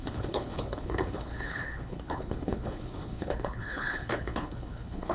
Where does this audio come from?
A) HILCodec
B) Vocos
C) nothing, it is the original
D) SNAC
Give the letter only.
A